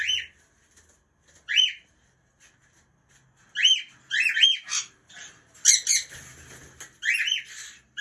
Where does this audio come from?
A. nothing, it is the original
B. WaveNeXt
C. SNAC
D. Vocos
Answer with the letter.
A